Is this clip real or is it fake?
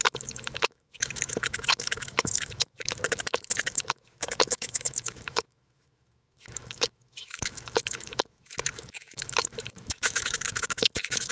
fake